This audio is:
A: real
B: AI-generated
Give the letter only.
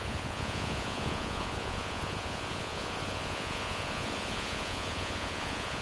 B